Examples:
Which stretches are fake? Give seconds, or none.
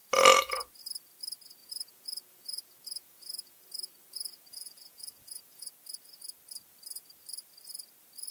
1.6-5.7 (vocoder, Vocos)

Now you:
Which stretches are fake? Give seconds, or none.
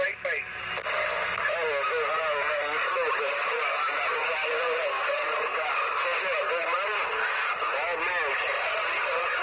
none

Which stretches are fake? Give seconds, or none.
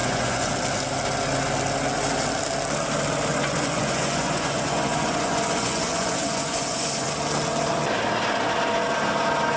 0.0-0.5 (vocoder, Vocos); 3.3-7.1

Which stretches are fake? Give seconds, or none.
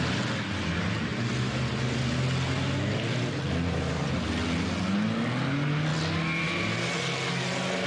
none